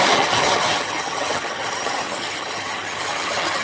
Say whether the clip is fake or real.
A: fake